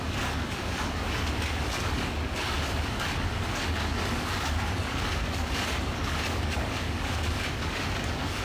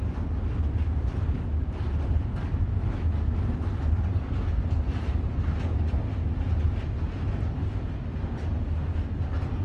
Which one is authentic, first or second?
second